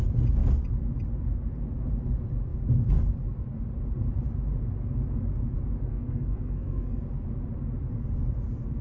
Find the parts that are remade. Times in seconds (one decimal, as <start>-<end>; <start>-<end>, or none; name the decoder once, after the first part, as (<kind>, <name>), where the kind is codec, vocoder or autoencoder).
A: 5.9-7.0 (codec, SNAC)